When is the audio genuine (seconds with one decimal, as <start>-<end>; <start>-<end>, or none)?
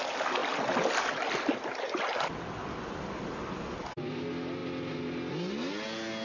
0.0-6.2